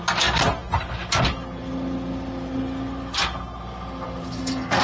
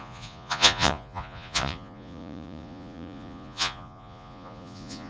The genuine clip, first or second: first